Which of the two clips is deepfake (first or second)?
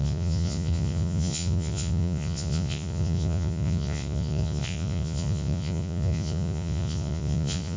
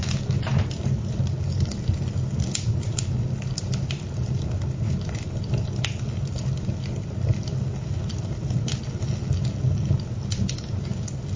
first